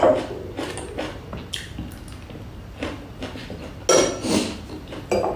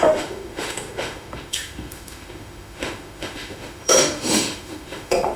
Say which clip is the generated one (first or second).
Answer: second